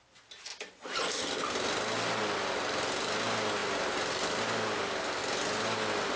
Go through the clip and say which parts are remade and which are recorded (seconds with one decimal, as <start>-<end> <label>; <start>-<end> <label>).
0.0-6.2 recorded